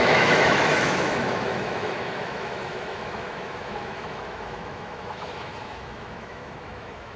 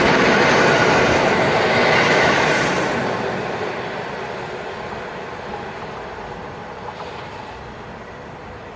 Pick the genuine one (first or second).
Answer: second